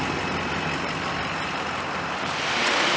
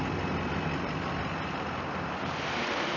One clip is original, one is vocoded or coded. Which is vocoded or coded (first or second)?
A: first